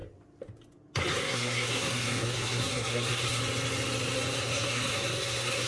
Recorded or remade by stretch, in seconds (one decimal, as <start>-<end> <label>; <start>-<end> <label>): 0.0-1.1 recorded; 1.1-3.4 remade; 3.4-4.4 recorded; 4.4-5.7 remade

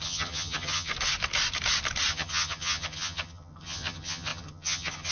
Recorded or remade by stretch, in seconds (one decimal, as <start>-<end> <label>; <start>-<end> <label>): 0.0-0.9 remade; 0.9-2.1 recorded; 2.1-5.1 remade

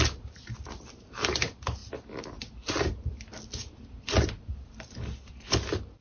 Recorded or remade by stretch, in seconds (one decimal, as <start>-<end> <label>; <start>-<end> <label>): 0.0-6.0 remade

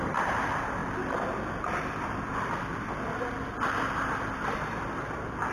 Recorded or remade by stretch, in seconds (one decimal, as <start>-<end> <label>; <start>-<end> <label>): 0.0-5.5 recorded

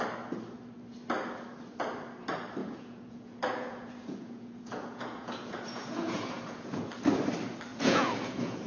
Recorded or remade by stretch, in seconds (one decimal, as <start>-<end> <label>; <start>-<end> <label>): 0.0-2.6 recorded; 2.6-6.9 remade; 6.9-7.7 recorded; 7.7-8.7 remade

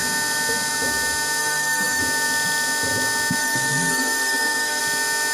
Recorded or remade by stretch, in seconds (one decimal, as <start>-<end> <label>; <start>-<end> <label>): 0.0-1.4 recorded; 1.4-2.0 remade; 2.0-3.4 recorded; 3.4-4.8 remade; 4.8-5.3 recorded

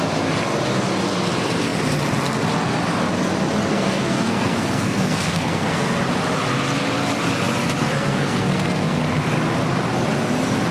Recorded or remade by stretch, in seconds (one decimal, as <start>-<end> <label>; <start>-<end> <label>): 0.0-3.7 recorded; 3.7-6.0 remade; 6.0-7.8 recorded; 7.8-9.0 remade; 9.0-10.7 recorded